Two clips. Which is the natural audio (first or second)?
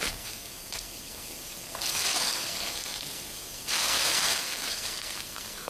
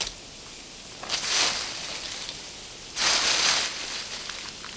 second